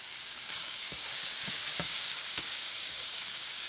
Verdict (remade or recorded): remade